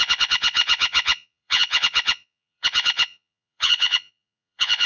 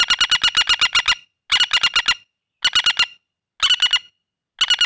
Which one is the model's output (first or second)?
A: first